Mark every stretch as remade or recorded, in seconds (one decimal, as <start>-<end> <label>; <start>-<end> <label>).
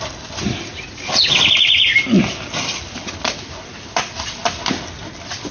0.0-5.5 recorded